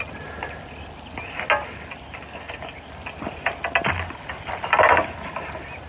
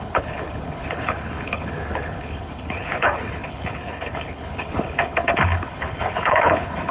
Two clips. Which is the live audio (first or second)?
first